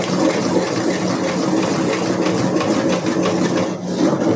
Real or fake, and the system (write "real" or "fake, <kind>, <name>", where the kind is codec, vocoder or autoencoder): real